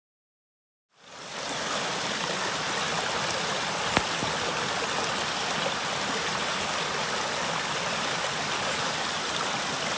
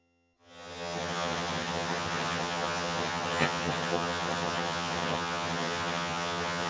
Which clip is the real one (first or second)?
first